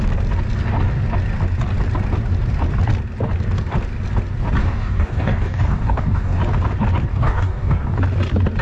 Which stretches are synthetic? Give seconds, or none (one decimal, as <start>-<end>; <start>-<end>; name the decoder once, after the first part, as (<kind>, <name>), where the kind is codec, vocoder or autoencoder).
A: 4.6-6.4 (codec, DAC); 7.1-8.0